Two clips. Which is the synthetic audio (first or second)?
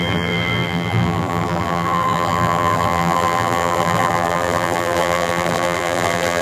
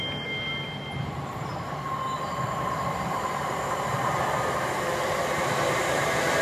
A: first